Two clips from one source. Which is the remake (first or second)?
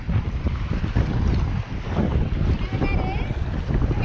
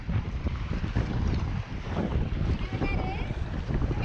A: second